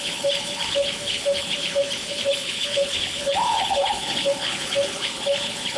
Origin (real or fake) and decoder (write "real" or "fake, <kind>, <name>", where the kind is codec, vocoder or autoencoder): fake, codec, HILCodec